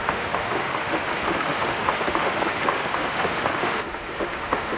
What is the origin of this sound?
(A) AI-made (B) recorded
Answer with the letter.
A